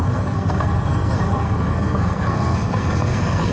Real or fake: fake